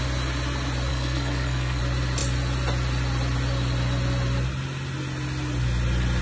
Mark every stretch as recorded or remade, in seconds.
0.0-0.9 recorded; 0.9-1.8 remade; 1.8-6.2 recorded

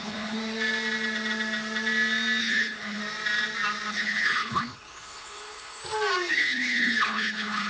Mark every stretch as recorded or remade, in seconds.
0.0-0.4 remade; 0.4-2.4 recorded; 2.4-3.0 remade; 3.0-3.9 recorded; 3.9-5.8 remade; 5.8-6.3 recorded; 6.3-7.7 remade

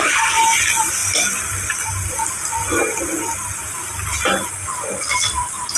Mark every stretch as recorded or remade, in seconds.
0.0-5.8 recorded

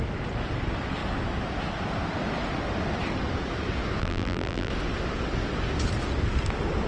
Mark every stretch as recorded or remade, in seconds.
0.0-4.0 recorded; 4.0-4.7 remade; 4.7-6.9 recorded